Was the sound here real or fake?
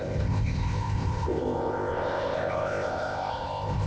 fake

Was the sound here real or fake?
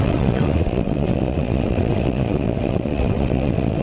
fake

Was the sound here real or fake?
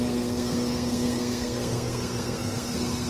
fake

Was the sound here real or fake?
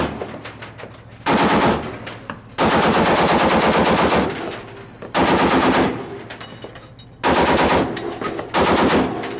real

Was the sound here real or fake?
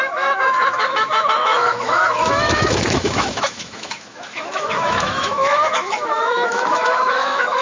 fake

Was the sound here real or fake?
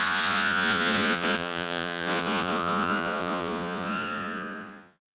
fake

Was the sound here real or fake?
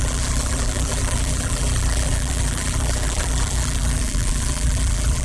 fake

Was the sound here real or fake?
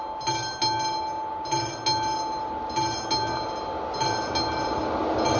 real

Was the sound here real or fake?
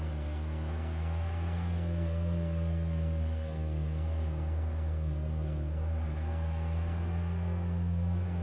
fake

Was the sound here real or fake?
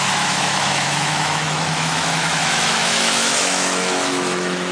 fake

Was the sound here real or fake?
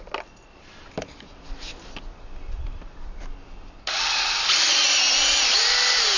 real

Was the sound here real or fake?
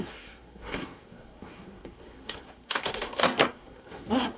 fake